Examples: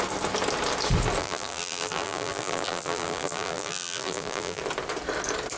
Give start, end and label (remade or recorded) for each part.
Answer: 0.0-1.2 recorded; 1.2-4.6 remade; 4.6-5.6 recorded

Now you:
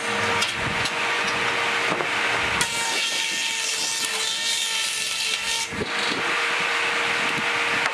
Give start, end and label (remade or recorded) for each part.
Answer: 0.0-0.4 recorded; 0.4-1.5 remade; 1.5-7.9 recorded

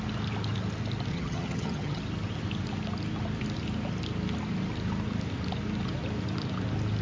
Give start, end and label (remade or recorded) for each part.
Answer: 0.0-1.1 recorded; 1.1-2.0 remade; 2.0-7.0 recorded

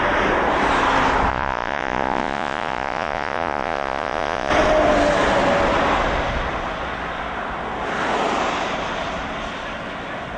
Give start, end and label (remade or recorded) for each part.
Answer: 0.0-1.3 recorded; 1.3-4.5 remade; 4.5-10.4 recorded

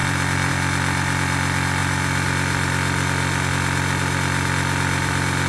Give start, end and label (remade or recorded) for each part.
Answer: 0.0-0.5 remade; 0.5-5.5 recorded